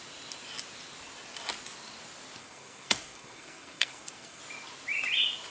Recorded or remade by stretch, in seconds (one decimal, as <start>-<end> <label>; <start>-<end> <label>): 0.0-2.4 recorded; 2.4-4.4 remade; 4.4-5.5 recorded